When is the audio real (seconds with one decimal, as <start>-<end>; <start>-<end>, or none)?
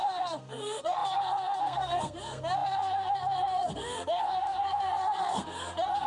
none